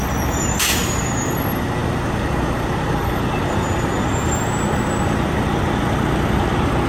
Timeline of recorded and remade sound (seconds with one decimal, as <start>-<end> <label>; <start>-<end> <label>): 0.0-6.9 recorded